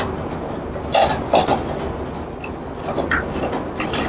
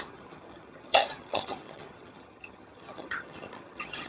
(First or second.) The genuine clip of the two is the first